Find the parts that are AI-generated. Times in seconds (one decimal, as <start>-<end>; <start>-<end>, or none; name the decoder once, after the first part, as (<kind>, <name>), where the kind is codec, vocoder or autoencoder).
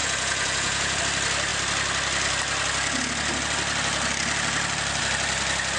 0.0-1.0 (vocoder, Vocos)